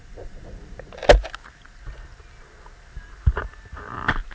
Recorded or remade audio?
recorded